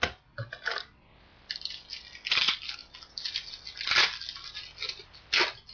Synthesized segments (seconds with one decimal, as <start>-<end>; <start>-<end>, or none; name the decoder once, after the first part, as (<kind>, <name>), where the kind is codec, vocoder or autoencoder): 1.3-1.9 (vocoder, BigVGAN v2)